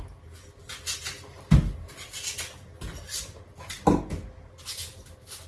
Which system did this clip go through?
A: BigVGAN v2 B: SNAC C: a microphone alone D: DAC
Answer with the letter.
C